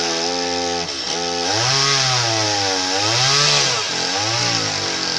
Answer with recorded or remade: recorded